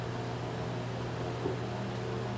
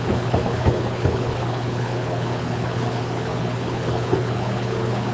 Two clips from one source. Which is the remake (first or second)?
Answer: second